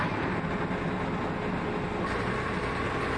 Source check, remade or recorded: recorded